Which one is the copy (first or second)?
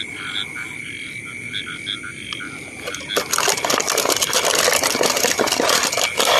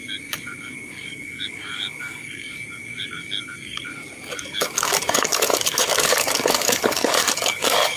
second